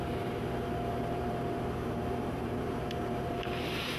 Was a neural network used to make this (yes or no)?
yes